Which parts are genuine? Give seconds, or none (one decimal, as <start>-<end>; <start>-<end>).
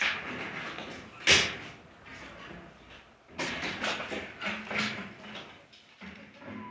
0.0-6.7